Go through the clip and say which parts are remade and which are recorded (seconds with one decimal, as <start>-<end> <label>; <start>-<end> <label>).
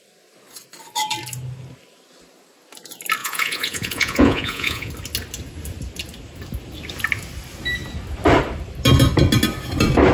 0.0-3.2 recorded; 3.2-4.9 remade; 4.9-10.1 recorded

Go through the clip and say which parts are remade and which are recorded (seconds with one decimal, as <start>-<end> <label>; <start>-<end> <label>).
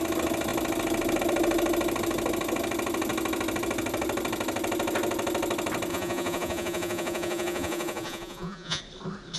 0.0-5.9 recorded; 5.9-8.8 remade; 8.8-9.4 recorded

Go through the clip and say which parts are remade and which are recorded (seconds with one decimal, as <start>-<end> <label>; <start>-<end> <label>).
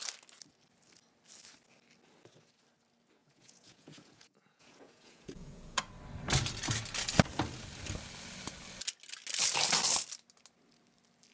0.0-3.2 recorded; 3.2-5.8 remade; 5.8-11.3 recorded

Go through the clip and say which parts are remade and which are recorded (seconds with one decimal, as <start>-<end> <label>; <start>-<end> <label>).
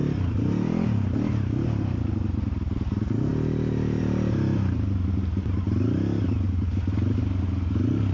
0.0-8.1 recorded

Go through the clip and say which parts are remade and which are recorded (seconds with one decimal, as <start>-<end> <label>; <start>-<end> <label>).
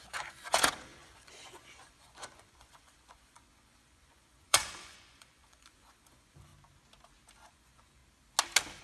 0.0-6.5 remade; 6.5-7.5 recorded; 7.5-8.0 remade; 8.0-8.8 recorded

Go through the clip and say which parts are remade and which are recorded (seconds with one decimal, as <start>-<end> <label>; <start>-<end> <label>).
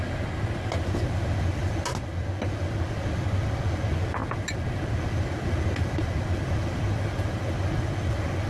0.0-8.5 recorded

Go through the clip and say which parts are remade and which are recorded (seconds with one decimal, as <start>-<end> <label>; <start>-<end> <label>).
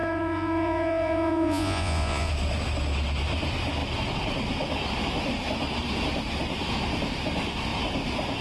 0.0-2.3 remade; 2.3-8.4 recorded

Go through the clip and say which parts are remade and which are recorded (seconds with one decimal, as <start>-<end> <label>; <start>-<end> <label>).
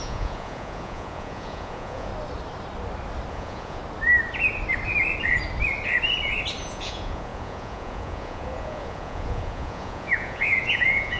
0.0-2.1 remade; 2.1-3.3 recorded; 3.3-3.8 remade; 3.8-6.6 recorded; 6.6-11.2 remade